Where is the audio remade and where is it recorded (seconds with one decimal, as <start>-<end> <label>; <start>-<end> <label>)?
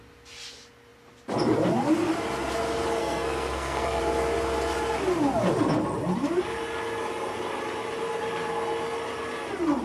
0.0-3.0 recorded; 3.0-4.0 remade; 4.0-9.8 recorded